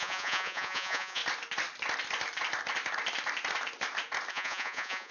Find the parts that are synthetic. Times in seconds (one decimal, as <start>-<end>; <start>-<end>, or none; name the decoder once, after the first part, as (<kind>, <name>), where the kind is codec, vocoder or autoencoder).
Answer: 0.0-1.2 (vocoder, Vocos); 4.3-5.1